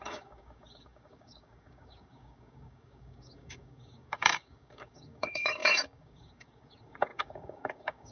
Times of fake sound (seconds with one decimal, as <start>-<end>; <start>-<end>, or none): 0.0-8.1